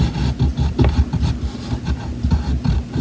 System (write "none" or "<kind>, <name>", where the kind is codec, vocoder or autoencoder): none